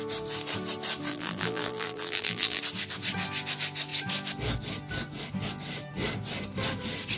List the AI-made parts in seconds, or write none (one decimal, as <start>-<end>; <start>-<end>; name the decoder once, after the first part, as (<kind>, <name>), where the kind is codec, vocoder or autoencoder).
1.1-2.6 (vocoder, BigVGAN v2)